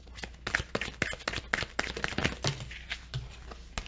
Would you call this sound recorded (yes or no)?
yes